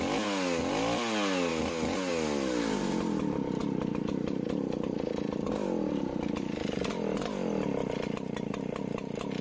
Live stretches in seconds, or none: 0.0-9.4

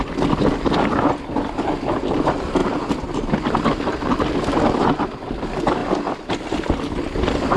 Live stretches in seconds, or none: 0.0-7.6

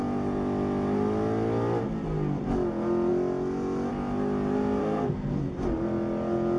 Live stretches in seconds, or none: 0.0-4.8; 5.4-6.6

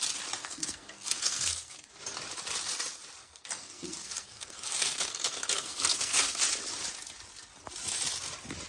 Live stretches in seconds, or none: 0.0-0.4; 1.9-3.2; 6.4-8.7

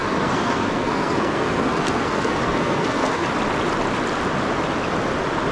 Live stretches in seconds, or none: 3.3-5.5